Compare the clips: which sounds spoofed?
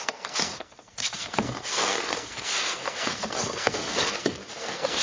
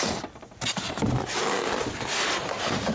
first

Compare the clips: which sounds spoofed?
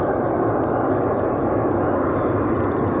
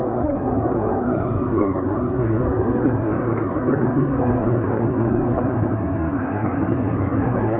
second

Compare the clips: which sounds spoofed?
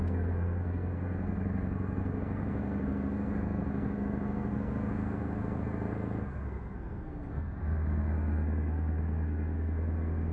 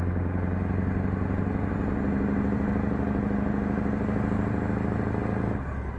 first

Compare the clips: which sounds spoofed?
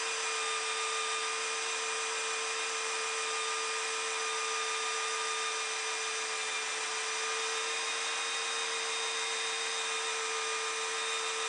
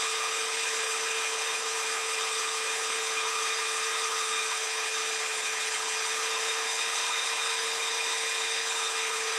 second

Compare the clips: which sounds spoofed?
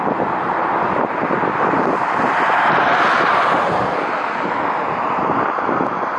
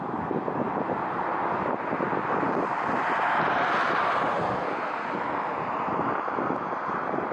first